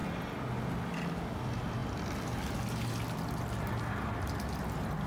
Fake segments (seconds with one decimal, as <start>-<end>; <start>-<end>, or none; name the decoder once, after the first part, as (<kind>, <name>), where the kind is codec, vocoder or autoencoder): none